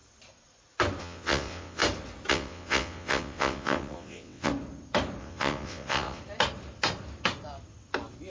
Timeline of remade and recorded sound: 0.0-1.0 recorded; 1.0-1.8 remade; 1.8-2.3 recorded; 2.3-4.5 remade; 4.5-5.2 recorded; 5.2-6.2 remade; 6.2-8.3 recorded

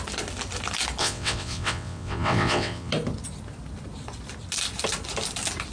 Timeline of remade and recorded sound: 0.0-1.0 recorded; 1.0-2.9 remade; 2.9-5.7 recorded

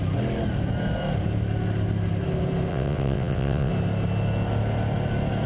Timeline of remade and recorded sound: 0.0-2.7 recorded; 2.7-3.7 remade; 3.7-5.5 recorded

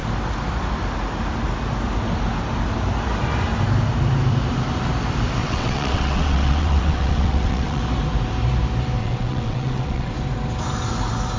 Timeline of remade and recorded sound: 0.0-5.4 recorded; 5.4-7.8 remade; 7.8-9.0 recorded; 9.0-10.1 remade; 10.1-11.4 recorded

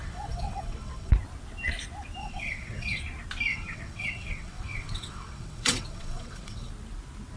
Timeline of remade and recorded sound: 0.0-1.1 remade; 1.1-2.2 recorded; 2.2-3.0 remade; 3.0-3.5 recorded; 3.5-6.7 remade; 6.7-7.4 recorded

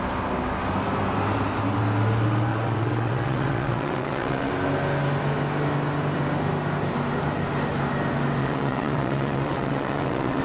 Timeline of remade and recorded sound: 0.0-2.5 recorded; 2.5-4.5 remade; 4.5-8.4 recorded; 8.4-10.4 remade

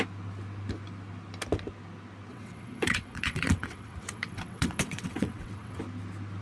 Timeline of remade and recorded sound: 0.0-2.3 recorded; 2.3-5.8 remade; 5.8-6.4 recorded